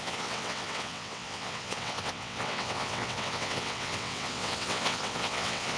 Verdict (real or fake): fake